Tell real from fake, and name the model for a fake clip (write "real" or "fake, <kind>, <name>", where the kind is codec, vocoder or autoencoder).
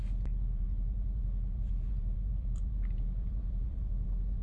fake, vocoder, BigVGAN v2